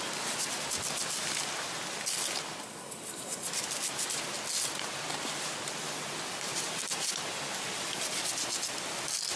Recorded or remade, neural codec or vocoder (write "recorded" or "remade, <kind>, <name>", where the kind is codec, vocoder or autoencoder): recorded